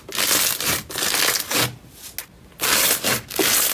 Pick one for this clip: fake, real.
real